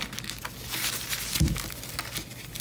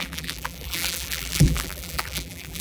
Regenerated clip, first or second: second